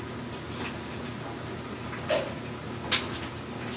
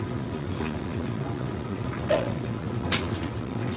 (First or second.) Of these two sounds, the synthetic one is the second